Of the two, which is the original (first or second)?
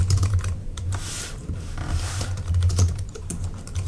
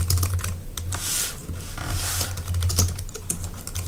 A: second